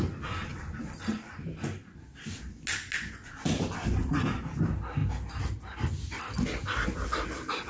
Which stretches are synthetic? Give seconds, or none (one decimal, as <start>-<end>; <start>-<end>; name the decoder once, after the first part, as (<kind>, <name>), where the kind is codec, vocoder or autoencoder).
0.5-2.0 (vocoder, BigVGAN v2); 4.0-4.6